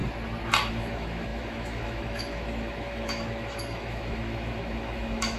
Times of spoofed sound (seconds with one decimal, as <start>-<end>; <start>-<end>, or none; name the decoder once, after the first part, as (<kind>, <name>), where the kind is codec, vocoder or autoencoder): 0.7-5.4 (autoencoder, DAC-VAE)